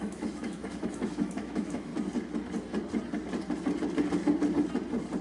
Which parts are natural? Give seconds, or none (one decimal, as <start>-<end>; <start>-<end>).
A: 1.9-5.2